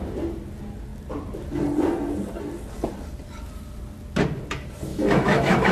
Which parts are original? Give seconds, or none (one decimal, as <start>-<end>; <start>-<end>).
0.0-4.9